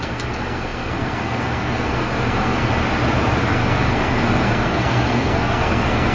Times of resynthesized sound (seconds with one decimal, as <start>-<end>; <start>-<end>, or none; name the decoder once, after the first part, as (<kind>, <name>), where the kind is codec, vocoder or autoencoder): 0.0-2.7 (codec, SNAC); 3.4-6.1